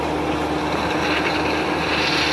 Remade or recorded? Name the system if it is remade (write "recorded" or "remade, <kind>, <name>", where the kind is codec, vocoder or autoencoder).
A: recorded